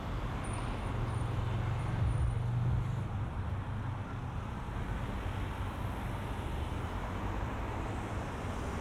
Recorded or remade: recorded